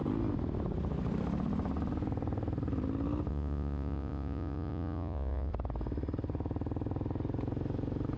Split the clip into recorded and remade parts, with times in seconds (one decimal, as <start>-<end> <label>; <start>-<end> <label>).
0.0-3.3 recorded; 3.3-5.5 remade; 5.5-8.2 recorded